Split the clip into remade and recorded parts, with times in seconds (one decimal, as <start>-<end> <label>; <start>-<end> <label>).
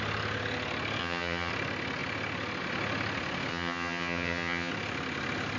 0.0-1.0 recorded; 1.0-1.5 remade; 1.5-3.5 recorded; 3.5-4.7 remade; 4.7-5.6 recorded